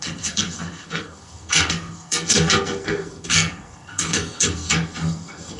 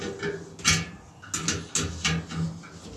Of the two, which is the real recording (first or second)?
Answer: second